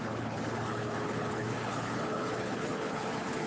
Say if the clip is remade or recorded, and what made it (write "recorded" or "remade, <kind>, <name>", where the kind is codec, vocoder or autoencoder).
remade, codec, HILCodec